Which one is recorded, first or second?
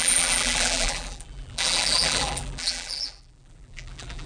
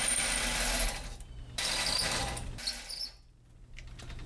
second